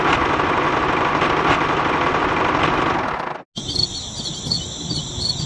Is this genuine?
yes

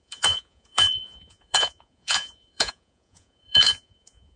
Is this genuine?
no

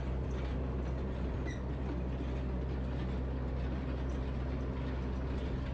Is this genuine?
yes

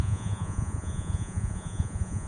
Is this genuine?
no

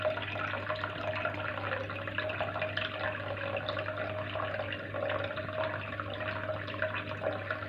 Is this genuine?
yes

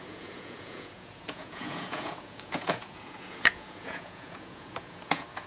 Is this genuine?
no